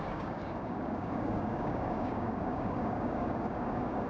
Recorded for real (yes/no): no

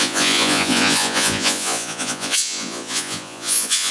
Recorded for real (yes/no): no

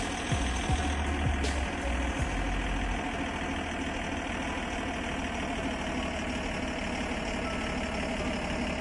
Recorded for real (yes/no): yes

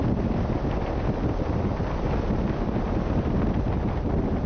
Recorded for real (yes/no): yes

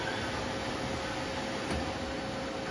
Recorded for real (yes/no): yes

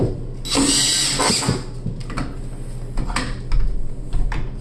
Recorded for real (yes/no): yes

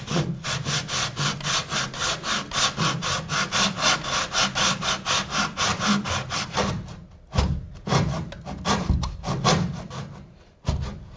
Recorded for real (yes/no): yes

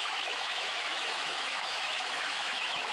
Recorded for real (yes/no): no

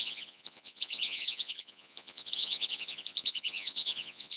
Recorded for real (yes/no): no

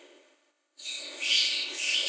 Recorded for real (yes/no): no